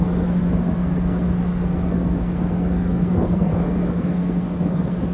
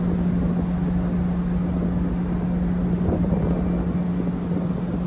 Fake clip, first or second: first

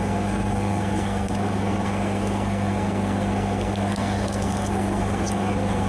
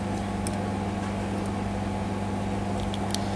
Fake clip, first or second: first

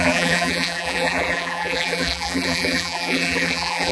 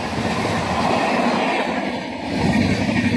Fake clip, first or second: first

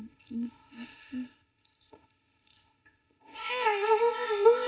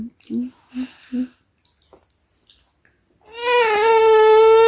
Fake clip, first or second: first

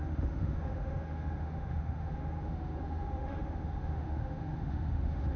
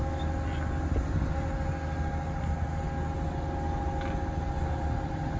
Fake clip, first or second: first